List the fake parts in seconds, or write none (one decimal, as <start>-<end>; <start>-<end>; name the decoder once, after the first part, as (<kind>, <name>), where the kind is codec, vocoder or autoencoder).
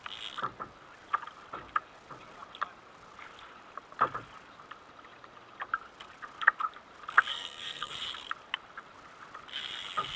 7.3-7.9 (codec, SNAC)